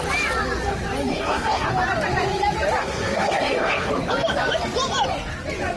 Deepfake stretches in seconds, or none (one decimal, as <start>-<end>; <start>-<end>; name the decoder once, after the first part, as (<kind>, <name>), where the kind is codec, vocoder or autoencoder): 1.1-1.7 (codec, SNAC); 2.8-3.9